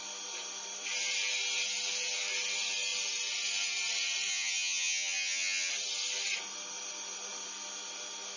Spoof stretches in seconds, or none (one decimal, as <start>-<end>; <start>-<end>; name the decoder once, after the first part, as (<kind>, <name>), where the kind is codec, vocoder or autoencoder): 4.3-5.7 (vocoder, HiFi-GAN)